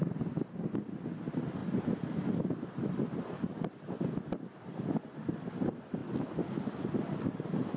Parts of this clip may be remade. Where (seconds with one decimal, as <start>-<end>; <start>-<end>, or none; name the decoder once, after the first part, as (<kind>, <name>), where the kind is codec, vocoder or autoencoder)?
none